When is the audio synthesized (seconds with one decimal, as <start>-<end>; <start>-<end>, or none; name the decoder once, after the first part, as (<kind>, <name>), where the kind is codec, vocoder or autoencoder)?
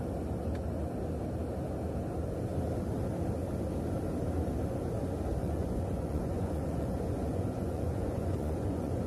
5.4-9.1 (vocoder, Vocos)